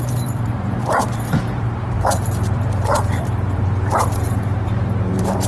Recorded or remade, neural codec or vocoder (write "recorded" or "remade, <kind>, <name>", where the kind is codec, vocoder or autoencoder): remade, vocoder, BigVGAN v2